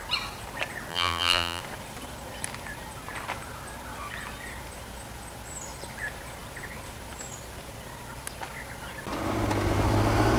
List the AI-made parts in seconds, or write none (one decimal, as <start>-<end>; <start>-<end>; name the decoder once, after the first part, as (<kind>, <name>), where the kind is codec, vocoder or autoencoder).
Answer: 0.9-1.6 (vocoder, BigVGAN v2)